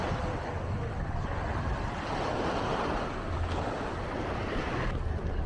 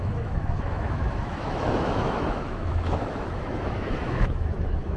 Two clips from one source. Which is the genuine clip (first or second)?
first